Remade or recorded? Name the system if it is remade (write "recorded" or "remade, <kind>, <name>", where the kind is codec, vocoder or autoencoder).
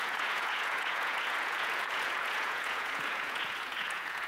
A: remade, vocoder, Vocos